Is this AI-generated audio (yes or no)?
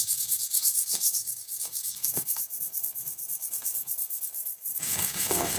yes